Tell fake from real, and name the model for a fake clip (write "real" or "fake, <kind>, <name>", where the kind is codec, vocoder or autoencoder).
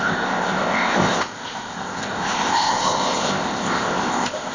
fake, codec, ZipCodec